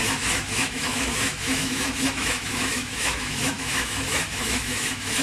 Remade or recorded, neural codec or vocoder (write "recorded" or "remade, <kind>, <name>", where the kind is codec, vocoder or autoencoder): remade, autoencoder, DAC-VAE